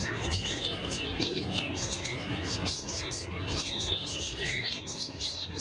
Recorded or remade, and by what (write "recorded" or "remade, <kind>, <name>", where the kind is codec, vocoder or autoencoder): remade, codec, SNAC